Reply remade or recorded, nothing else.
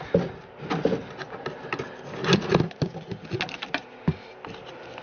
recorded